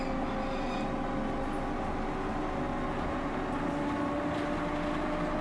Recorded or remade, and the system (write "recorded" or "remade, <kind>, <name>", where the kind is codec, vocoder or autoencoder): recorded